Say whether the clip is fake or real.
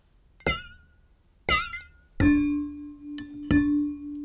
real